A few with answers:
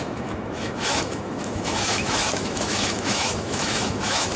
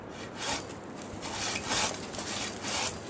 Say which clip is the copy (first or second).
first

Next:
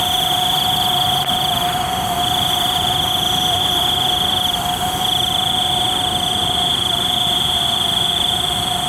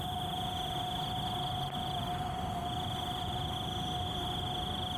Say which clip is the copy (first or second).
first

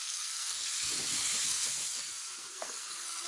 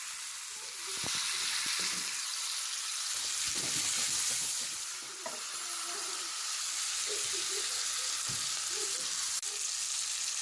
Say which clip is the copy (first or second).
first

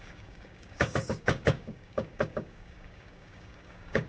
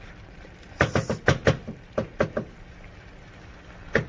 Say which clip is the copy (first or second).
first